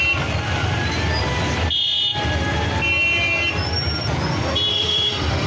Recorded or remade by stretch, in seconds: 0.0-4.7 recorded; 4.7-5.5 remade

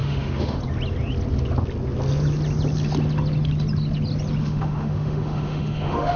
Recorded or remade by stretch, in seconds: 0.0-0.6 remade; 0.6-4.4 recorded; 4.4-6.2 remade

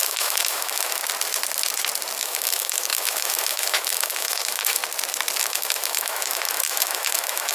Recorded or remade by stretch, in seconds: 0.0-1.0 remade; 1.0-2.2 recorded; 2.2-4.8 remade; 4.8-5.4 recorded; 5.4-7.5 remade